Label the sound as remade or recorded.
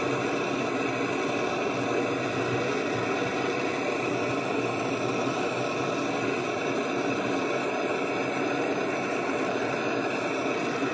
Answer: recorded